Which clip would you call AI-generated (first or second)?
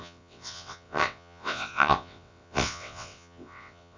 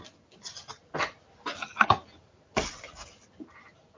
first